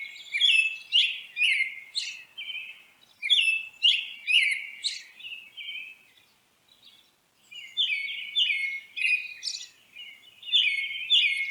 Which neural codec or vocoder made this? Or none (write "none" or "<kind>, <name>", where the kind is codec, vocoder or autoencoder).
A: none